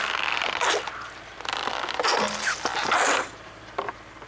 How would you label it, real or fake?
fake